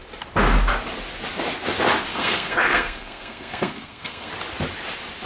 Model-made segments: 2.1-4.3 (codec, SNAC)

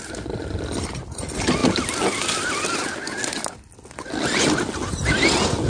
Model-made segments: none

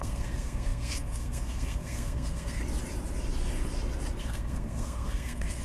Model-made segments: 0.0-2.6 (codec, SNAC); 4.2-5.6